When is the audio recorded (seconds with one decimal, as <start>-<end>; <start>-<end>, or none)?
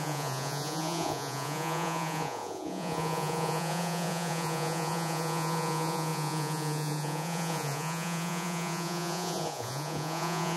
none